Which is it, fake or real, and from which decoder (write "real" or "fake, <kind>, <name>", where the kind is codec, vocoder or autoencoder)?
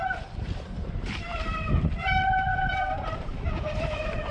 fake, vocoder, BigVGAN v2